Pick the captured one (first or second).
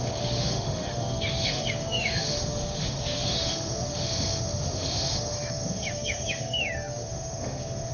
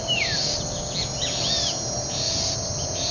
second